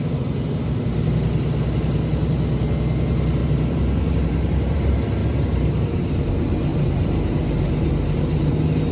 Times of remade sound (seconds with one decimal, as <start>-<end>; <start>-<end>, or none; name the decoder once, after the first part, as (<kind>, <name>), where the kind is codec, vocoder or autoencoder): 3.4-4.8 (vocoder, BigVGAN v2); 5.2-6.3; 6.7-7.5

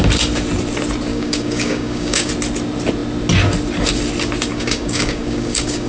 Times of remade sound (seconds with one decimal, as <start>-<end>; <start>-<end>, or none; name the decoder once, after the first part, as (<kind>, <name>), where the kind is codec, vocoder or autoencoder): 1.1-2.3 (codec, DAC); 4.5-5.9

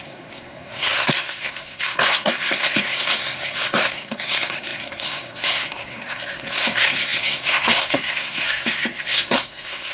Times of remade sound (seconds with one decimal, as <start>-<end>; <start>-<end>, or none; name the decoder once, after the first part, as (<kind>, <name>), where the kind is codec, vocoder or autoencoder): 0.0-9.9 (codec, SNAC)